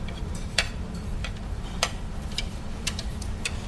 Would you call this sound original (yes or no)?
no